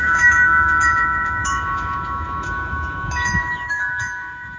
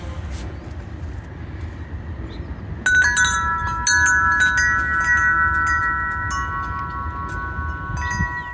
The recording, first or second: second